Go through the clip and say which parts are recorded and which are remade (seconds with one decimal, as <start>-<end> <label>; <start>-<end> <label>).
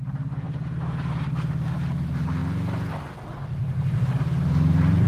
0.0-2.4 remade; 2.4-3.1 recorded; 3.1-5.1 remade